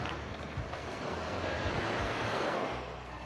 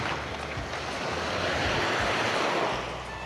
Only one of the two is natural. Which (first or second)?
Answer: second